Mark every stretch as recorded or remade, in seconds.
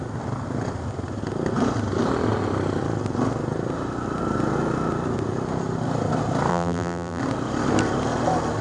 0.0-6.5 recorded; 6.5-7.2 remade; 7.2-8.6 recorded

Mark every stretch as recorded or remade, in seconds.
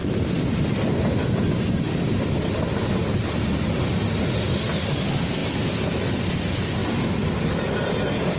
0.0-8.4 recorded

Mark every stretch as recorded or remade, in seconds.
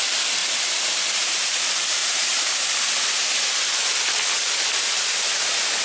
0.0-0.4 remade; 0.4-1.5 recorded; 1.5-2.0 remade; 2.0-5.8 recorded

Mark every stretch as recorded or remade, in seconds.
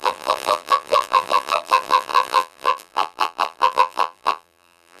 0.0-5.0 remade